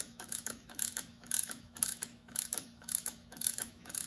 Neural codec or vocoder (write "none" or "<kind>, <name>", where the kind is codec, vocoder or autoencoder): autoencoder, DAC-VAE